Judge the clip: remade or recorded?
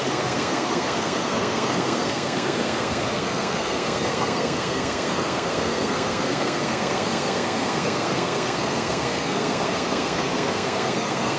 remade